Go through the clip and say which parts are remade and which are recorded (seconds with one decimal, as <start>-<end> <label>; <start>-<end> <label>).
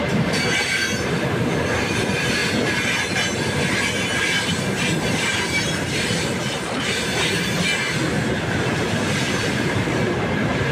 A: 0.0-2.4 remade; 2.4-4.3 recorded; 4.3-7.7 remade; 7.7-8.6 recorded; 8.6-10.7 remade